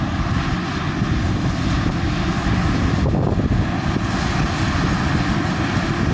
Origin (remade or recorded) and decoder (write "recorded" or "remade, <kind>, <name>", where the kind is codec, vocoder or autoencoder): recorded